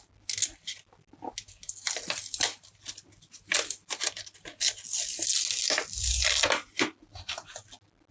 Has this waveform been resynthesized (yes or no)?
no